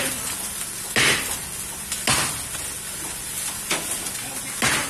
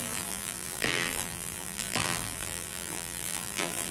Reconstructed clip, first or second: second